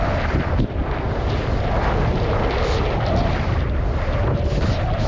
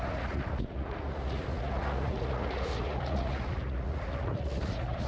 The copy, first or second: second